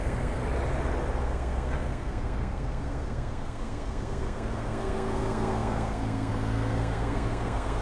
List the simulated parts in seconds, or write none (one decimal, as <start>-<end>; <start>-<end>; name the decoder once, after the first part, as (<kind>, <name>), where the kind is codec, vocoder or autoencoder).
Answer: 0.0-0.4 (codec, SNAC); 1.2-7.8